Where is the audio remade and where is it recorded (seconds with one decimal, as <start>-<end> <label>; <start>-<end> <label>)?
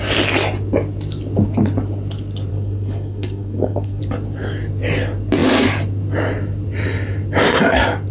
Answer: 0.0-2.5 recorded; 2.5-4.0 remade; 4.0-8.1 recorded